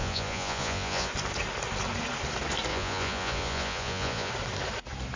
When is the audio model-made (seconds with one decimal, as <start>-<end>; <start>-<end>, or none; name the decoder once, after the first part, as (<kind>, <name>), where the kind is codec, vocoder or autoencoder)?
0.0-1.1 (vocoder, Vocos); 2.7-4.3